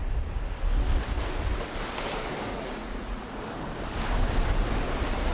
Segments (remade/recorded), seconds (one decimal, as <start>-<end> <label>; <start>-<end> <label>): 0.0-2.5 recorded; 2.5-3.4 remade; 3.4-5.3 recorded